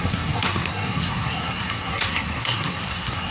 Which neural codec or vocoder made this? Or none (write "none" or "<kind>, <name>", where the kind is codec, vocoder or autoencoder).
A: codec, SNAC